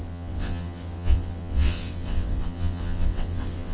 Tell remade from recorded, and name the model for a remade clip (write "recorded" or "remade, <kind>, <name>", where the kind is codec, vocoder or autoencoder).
remade, vocoder, WaveNeXt